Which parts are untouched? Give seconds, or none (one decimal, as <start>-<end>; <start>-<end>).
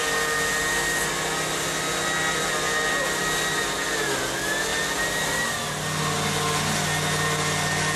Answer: 0.0-8.0